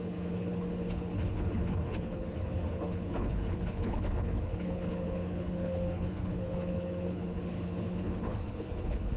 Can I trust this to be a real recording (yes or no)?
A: no